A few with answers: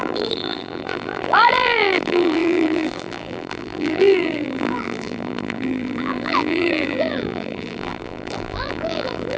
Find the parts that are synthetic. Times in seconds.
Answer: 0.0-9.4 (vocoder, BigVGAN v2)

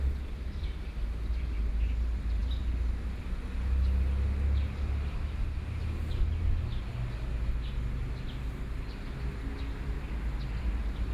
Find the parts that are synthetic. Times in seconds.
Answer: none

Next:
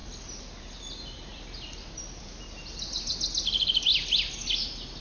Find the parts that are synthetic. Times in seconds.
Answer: 0.0-0.8 (vocoder, BigVGAN v2); 1.3-2.4